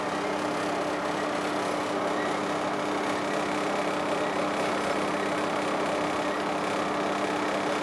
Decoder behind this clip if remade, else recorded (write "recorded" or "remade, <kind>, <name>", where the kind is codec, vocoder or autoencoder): recorded